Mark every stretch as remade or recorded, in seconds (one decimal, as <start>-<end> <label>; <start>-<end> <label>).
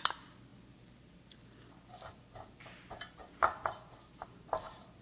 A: 0.0-5.0 recorded